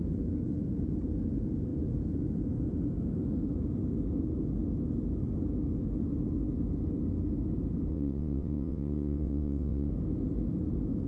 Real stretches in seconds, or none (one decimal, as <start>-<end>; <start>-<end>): 0.0-7.9; 9.9-11.1